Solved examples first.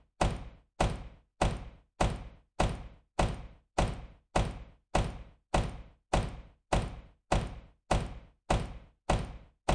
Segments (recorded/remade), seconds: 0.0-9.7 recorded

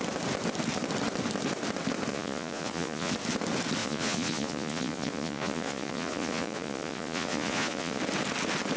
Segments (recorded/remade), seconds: 0.0-2.1 recorded; 2.1-3.1 remade; 3.1-3.8 recorded; 3.8-8.0 remade; 8.0-8.8 recorded

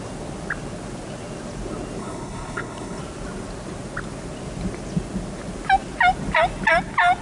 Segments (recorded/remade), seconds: 0.0-2.0 recorded; 2.0-3.0 remade; 3.0-7.2 recorded

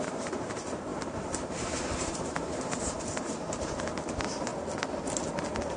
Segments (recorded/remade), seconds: 0.0-4.5 remade; 4.5-5.8 recorded

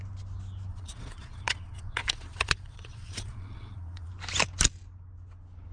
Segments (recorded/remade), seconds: 0.0-0.7 recorded; 0.7-4.1 remade; 4.1-5.7 recorded

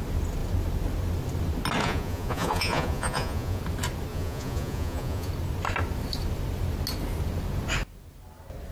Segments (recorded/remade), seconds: 0.0-1.8 recorded; 1.8-3.6 remade; 3.6-4.1 recorded; 4.1-5.3 remade; 5.3-8.7 recorded